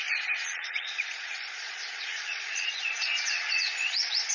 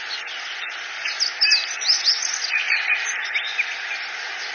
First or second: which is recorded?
second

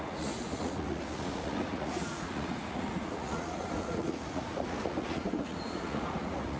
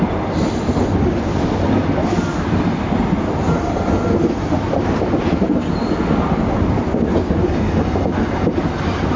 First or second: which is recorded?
second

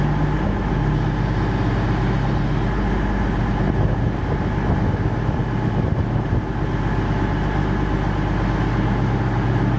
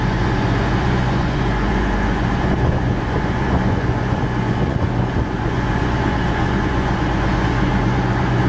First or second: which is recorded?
first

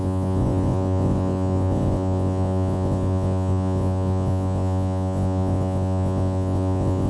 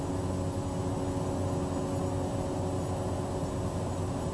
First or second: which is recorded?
second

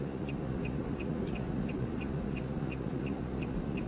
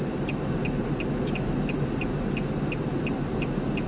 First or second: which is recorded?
second